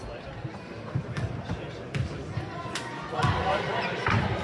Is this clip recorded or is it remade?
recorded